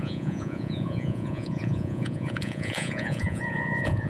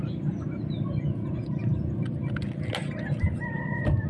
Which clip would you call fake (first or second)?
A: first